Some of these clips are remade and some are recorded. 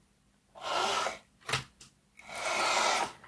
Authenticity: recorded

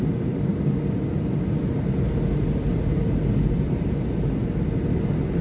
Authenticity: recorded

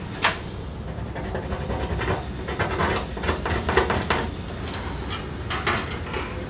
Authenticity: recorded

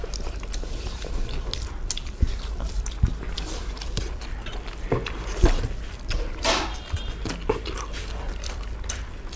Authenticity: recorded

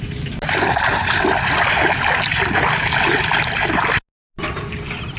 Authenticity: recorded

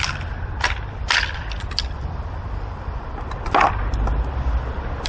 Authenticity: recorded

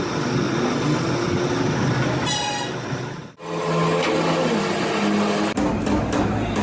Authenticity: recorded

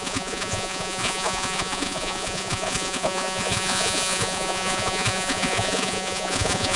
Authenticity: remade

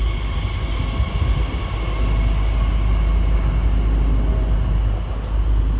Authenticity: recorded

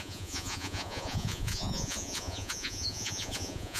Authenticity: remade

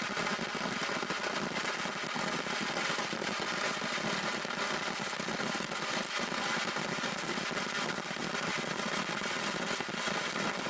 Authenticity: recorded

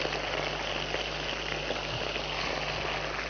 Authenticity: recorded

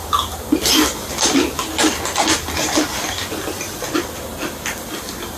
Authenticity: recorded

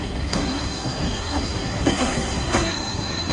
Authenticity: remade